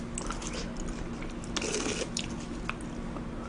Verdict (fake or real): real